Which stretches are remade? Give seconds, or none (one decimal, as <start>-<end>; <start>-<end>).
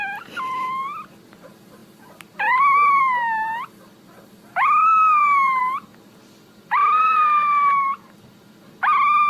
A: 4.8-5.6; 6.8-8.3